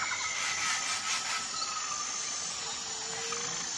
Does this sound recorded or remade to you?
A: recorded